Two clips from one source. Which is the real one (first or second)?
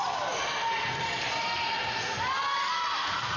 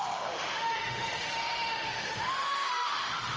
first